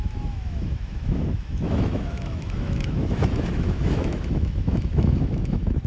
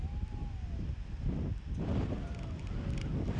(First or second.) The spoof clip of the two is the first